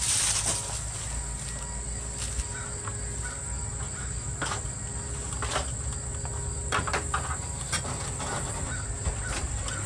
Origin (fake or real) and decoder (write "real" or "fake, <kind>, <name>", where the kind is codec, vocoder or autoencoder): real